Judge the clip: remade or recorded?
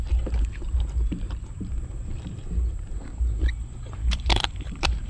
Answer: remade